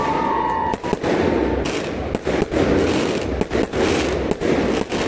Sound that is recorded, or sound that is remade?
recorded